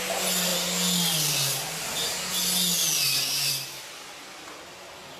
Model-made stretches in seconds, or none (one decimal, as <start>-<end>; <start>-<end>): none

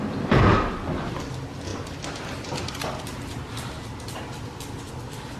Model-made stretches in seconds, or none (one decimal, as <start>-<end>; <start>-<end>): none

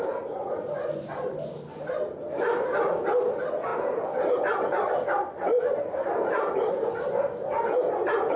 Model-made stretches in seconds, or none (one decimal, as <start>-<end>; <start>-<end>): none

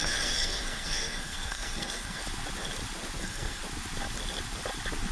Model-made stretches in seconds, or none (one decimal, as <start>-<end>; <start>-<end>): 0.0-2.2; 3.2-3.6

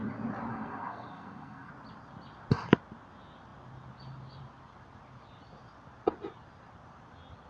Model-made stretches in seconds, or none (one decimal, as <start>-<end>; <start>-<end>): 0.5-1.7

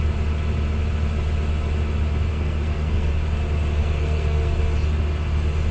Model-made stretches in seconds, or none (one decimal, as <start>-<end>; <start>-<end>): 2.3-3.1; 3.8-4.6

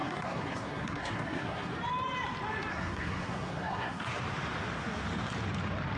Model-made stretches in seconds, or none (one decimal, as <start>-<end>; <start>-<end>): 0.0-1.7; 2.7-4.2

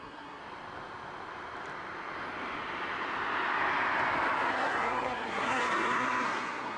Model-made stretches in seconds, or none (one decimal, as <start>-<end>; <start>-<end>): 0.0-0.4; 4.5-6.8